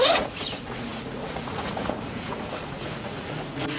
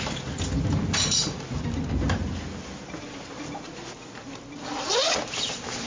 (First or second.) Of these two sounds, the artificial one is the first